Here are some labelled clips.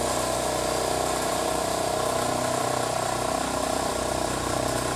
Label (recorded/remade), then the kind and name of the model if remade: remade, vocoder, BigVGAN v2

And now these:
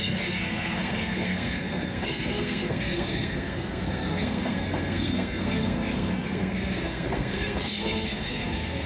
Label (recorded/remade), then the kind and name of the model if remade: remade, codec, SNAC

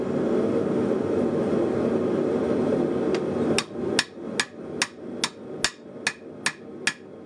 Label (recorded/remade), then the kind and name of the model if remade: recorded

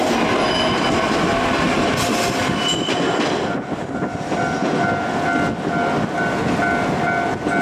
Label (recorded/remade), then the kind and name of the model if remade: recorded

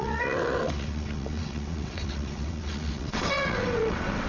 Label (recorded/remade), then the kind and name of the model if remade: remade, vocoder, WaveNeXt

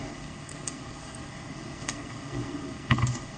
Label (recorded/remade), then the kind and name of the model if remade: remade, codec, SNAC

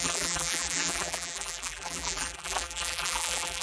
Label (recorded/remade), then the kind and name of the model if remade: remade, vocoder, BigVGAN v2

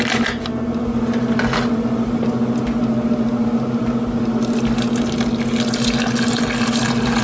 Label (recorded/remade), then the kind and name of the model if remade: recorded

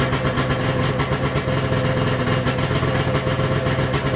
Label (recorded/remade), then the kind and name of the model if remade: recorded